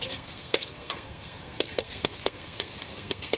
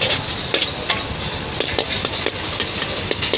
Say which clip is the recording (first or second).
second